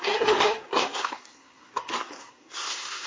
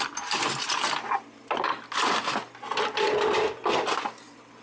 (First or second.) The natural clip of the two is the second